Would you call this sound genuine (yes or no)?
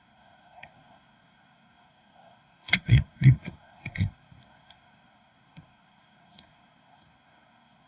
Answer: no